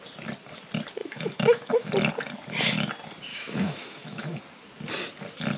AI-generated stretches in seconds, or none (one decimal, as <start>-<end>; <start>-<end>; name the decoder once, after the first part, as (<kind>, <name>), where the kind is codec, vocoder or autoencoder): 1.0-1.9 (autoencoder, DAC-VAE); 3.3-4.4